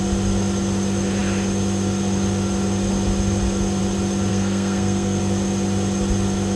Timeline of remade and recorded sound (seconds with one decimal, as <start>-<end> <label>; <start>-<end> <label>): 0.0-4.3 recorded; 4.3-5.2 remade; 5.2-6.6 recorded